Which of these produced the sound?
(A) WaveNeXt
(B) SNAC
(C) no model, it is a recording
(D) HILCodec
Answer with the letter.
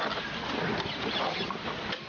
C